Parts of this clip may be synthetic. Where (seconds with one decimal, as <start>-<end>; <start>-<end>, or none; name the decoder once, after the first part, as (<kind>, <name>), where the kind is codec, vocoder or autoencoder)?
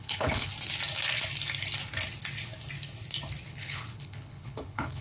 0.0-0.5 (codec, HILCodec); 3.5-5.0